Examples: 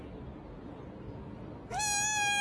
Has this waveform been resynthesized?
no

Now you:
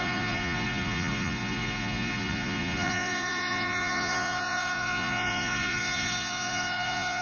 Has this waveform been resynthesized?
yes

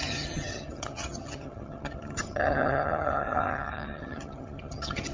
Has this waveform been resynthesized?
yes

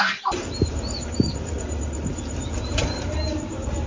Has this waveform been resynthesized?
yes